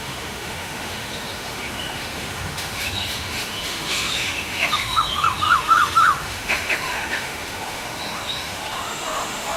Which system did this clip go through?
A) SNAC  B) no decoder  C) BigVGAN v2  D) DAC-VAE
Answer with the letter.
D